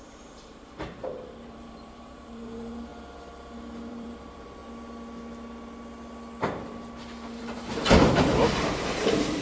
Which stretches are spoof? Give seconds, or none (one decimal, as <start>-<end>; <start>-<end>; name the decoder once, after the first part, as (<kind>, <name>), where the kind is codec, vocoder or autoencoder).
0.0-2.9 (vocoder, BigVGAN v2); 3.9-4.6; 7.4-9.4